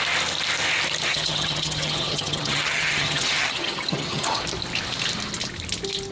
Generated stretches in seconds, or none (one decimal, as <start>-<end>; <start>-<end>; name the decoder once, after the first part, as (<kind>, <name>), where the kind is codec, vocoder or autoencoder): 1.1-4.4 (vocoder, HiFi-GAN)